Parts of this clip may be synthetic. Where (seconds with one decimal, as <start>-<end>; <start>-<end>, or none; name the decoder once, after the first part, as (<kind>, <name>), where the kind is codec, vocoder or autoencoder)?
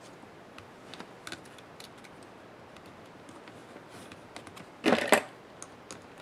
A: none